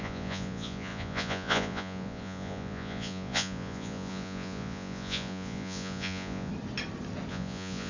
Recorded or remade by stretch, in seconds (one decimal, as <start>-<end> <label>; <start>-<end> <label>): 0.0-6.5 remade; 6.5-7.3 recorded; 7.3-7.9 remade